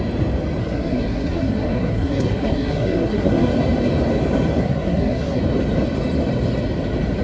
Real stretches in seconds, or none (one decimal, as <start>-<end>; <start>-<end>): 0.0-0.6; 3.5-4.6; 5.4-7.2